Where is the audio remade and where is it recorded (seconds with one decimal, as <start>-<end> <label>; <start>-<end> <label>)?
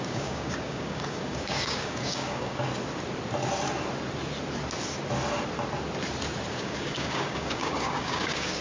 0.0-2.7 remade; 2.7-6.5 recorded; 6.5-8.6 remade